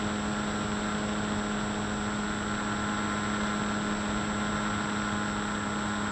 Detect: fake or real real